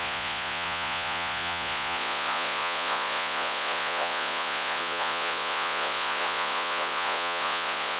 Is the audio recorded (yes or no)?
no